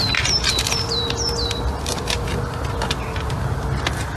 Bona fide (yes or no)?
no